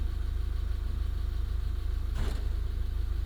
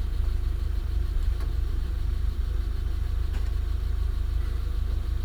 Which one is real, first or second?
first